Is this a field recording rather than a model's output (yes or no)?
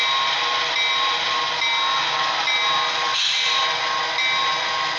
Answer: yes